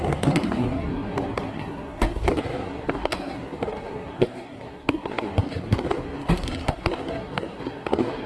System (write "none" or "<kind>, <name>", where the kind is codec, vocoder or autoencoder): codec, SNAC